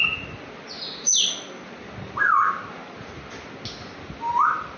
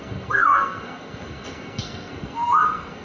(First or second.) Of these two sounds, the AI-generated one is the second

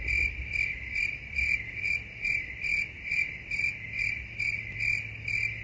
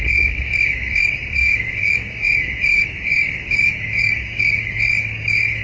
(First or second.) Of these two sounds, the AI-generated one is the second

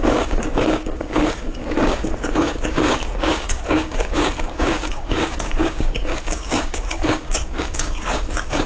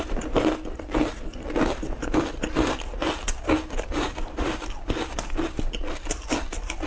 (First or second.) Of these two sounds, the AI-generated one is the first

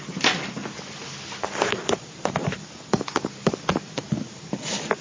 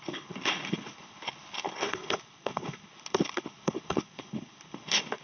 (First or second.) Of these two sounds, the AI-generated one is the second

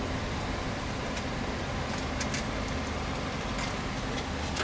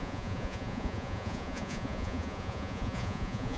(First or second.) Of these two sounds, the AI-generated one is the second